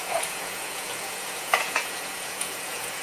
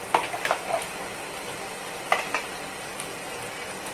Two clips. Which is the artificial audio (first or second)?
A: first